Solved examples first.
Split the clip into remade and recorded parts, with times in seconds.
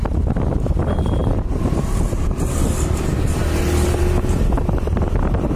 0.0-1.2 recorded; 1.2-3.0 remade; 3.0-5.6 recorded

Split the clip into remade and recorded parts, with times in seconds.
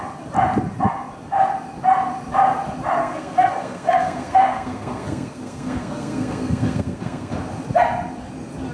0.0-3.0 recorded; 3.0-7.3 remade; 7.3-8.7 recorded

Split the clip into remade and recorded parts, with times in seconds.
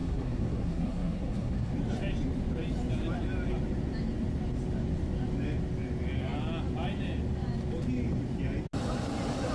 0.0-1.7 remade; 1.7-9.5 recorded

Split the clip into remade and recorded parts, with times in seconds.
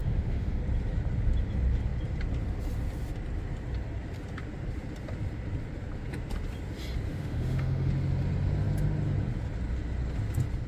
0.0-0.6 remade; 0.6-7.1 recorded; 7.1-7.9 remade; 7.9-10.7 recorded